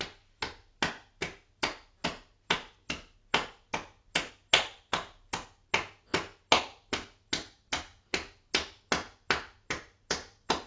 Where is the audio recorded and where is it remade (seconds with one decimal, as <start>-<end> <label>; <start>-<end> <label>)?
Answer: 0.0-10.7 recorded